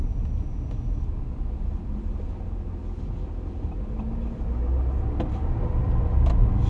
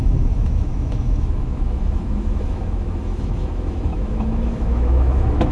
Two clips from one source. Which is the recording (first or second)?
first